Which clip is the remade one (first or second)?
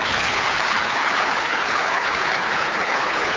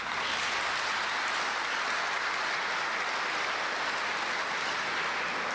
first